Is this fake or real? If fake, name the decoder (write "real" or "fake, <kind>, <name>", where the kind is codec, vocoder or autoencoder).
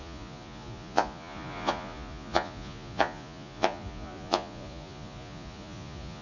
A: fake, vocoder, Vocos